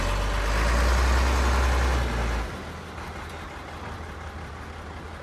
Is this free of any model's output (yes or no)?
yes